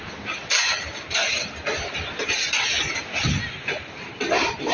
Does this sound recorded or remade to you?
recorded